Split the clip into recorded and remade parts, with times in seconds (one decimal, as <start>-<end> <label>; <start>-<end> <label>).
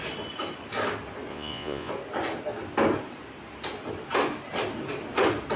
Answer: 0.0-1.3 recorded; 1.3-1.9 remade; 1.9-5.6 recorded